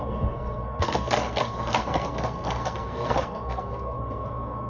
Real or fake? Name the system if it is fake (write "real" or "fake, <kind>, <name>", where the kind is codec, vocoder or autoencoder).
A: fake, codec, SNAC